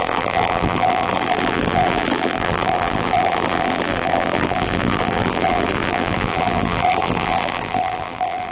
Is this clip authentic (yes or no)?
no